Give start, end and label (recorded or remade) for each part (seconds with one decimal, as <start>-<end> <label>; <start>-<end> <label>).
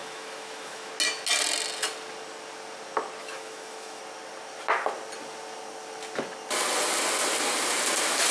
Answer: 0.0-0.9 remade; 0.9-3.2 recorded; 3.2-4.0 remade; 4.0-8.3 recorded